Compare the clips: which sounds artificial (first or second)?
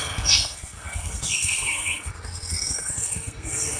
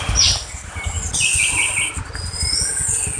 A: first